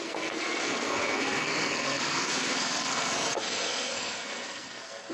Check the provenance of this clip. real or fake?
fake